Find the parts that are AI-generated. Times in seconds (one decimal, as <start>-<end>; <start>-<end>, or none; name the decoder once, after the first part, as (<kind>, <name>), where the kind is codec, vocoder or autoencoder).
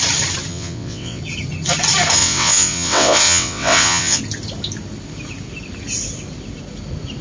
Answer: 0.5-1.2 (vocoder, WaveNeXt); 2.2-4.2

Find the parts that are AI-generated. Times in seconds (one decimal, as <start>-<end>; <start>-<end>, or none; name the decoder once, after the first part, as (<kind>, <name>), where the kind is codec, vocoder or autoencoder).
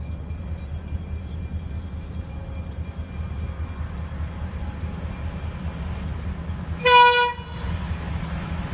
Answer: none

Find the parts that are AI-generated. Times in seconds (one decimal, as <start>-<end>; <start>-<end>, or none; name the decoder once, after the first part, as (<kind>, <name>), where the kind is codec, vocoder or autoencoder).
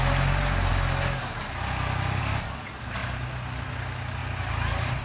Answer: none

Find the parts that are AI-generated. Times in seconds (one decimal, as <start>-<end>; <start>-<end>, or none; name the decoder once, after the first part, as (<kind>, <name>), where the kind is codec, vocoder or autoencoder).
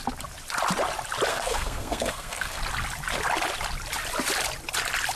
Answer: 1.3-2.6 (codec, SNAC)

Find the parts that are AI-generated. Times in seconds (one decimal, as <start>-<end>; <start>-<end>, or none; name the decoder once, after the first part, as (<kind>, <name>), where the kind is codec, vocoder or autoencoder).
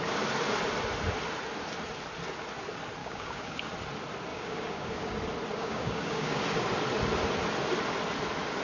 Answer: 3.0-3.7 (codec, DAC); 4.3-5.1; 5.5-6.4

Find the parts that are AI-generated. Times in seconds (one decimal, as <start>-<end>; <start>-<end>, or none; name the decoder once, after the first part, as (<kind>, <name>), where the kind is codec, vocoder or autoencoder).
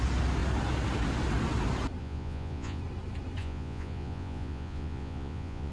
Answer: 2.0-2.8 (vocoder, Vocos); 3.4-5.7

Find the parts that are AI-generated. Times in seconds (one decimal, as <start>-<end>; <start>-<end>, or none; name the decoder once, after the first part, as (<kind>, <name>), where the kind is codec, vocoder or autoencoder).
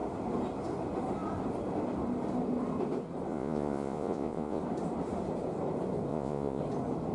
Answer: 3.3-4.6 (vocoder, Vocos); 6.1-6.6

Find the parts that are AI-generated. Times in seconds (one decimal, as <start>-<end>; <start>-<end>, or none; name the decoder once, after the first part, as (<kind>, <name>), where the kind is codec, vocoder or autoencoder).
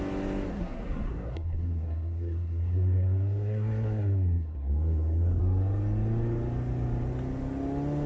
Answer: 0.5-5.4 (codec, SNAC)